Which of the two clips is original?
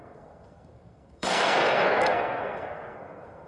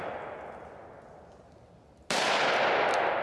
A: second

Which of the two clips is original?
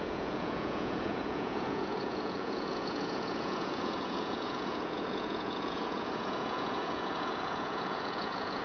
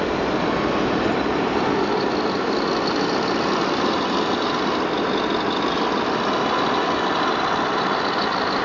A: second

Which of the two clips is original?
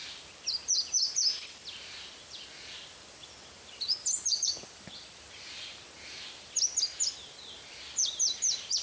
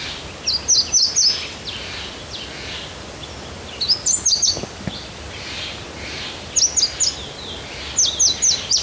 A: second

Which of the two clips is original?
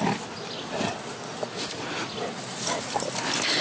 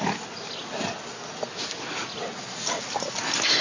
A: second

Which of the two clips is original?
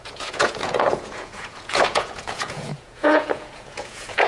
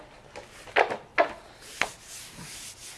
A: second